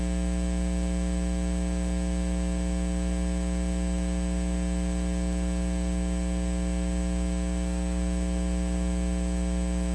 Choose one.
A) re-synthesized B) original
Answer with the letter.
B